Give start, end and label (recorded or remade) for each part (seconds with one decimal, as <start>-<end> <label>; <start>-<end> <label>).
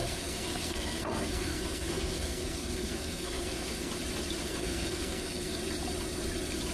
0.0-3.9 remade; 3.9-4.4 recorded; 4.4-5.6 remade; 5.6-6.7 recorded